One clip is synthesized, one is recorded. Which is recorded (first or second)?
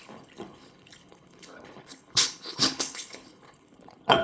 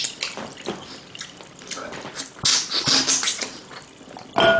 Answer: second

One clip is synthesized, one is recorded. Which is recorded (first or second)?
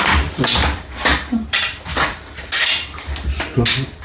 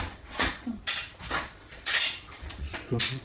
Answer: first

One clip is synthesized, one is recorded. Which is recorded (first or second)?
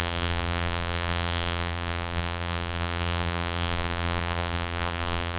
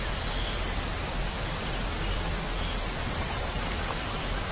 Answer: second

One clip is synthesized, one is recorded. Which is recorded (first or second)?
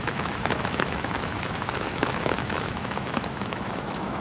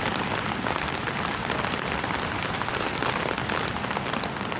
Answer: second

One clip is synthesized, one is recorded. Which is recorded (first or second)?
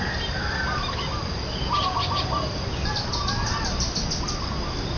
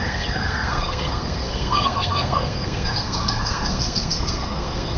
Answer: first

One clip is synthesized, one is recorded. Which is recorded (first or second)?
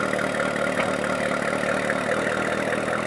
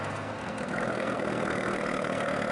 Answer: first